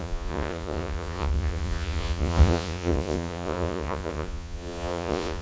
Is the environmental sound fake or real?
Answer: fake